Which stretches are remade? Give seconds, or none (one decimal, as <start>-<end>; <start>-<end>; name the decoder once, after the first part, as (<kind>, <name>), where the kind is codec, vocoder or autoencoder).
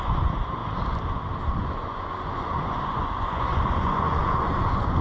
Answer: 0.0-0.6 (vocoder, Vocos); 1.5-5.0